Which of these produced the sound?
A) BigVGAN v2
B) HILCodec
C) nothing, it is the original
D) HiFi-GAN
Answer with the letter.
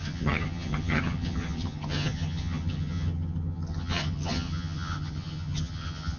D